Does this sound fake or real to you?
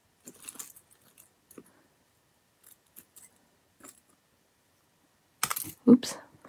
real